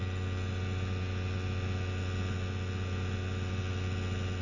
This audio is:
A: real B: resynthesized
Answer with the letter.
A